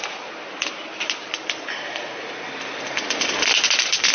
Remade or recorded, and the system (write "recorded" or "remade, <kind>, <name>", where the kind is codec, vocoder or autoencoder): recorded